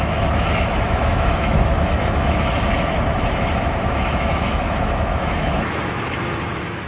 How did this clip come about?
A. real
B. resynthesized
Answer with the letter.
B